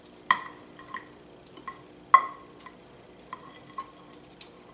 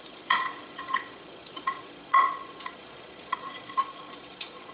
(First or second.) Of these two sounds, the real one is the first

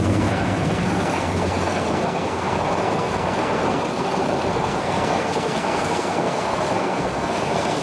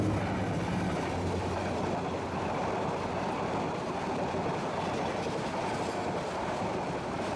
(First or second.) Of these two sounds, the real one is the second